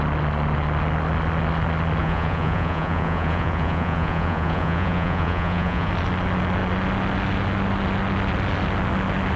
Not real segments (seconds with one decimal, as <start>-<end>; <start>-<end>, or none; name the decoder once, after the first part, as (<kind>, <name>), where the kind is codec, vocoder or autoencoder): 2.0-5.9 (vocoder, Vocos)